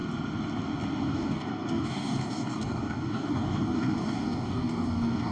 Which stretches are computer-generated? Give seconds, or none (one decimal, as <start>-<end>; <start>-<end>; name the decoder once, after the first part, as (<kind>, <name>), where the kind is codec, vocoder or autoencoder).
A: 1.0-5.3 (codec, DAC)